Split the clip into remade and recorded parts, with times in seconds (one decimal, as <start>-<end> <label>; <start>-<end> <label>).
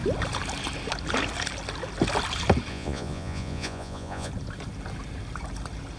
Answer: 0.0-2.7 recorded; 2.7-4.3 remade; 4.3-6.0 recorded